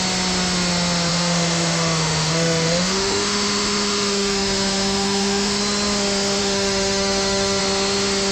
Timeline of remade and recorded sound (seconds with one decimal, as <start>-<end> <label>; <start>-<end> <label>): 0.0-1.1 recorded; 1.1-5.6 remade; 5.6-6.4 recorded; 6.4-7.6 remade; 7.6-8.3 recorded